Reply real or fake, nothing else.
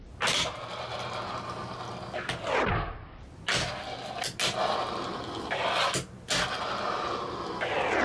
real